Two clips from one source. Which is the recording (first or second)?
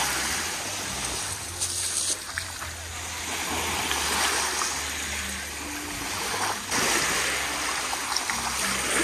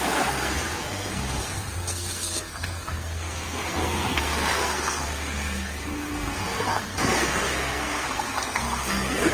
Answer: first